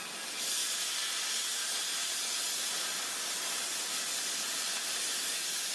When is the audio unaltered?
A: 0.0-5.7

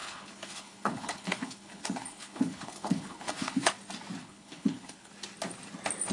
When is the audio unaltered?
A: 3.7-4.2; 5.1-6.1

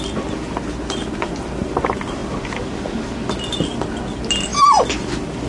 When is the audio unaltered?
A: 0.0-5.5